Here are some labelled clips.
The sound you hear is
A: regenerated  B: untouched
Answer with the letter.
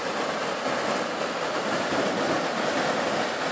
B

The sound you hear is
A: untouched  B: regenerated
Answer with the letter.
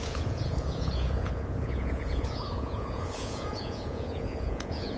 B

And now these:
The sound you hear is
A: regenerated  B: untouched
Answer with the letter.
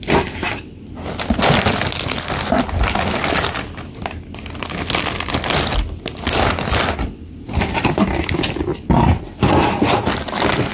B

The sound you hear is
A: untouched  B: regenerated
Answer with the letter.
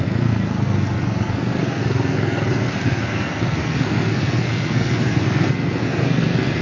B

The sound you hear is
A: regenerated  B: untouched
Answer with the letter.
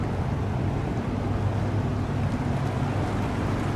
B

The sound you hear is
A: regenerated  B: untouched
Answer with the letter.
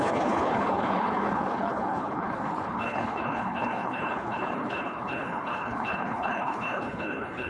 A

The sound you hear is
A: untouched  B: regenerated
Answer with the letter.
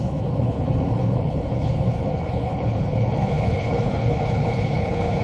B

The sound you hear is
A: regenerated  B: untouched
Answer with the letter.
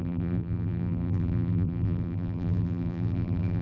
A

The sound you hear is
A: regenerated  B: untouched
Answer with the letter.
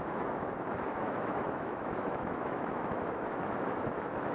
A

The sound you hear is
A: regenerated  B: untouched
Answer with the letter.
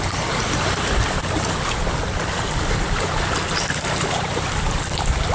B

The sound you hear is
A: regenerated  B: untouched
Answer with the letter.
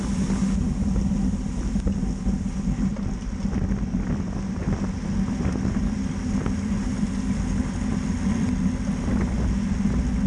B